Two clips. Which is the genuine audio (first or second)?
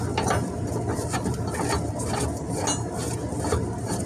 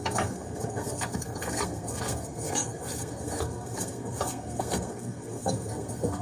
first